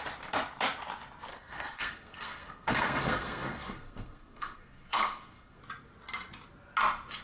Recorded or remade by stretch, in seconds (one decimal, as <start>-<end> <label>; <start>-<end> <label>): 0.0-1.3 recorded; 1.3-5.6 remade; 5.6-7.2 recorded